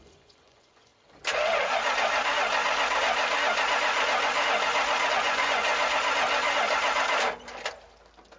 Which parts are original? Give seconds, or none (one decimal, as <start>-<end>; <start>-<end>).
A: 0.9-5.1; 5.7-8.4